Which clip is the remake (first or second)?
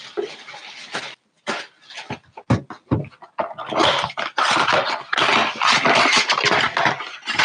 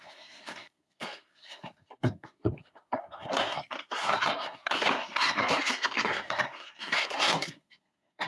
second